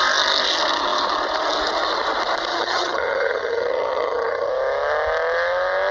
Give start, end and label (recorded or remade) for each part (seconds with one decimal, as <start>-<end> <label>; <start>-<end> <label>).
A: 0.0-2.5 recorded; 2.5-4.5 remade; 4.5-5.9 recorded